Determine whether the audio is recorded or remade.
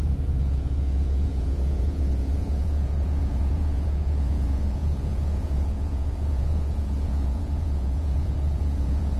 remade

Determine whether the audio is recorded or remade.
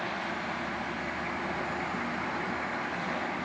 recorded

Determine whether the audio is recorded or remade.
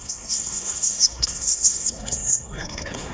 remade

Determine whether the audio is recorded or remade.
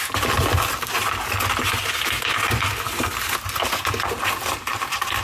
recorded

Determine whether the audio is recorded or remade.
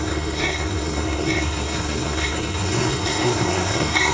remade